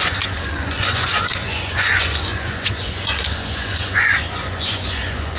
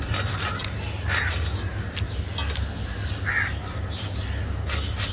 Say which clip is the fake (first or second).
first